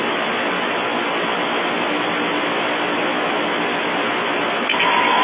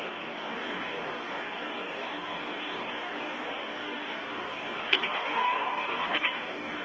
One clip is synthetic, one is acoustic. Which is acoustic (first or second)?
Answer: first